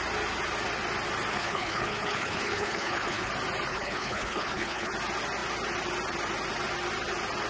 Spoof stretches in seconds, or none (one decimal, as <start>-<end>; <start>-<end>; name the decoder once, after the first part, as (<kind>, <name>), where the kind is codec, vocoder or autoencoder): 1.3-3.3 (codec, HILCodec); 3.7-4.9